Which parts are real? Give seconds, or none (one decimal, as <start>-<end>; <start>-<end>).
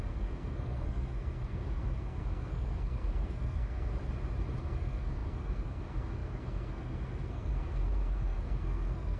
3.9-4.6